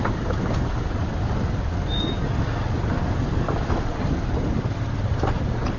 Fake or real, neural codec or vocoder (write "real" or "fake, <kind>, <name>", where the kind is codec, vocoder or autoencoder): real